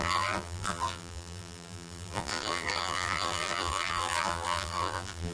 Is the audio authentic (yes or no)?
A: no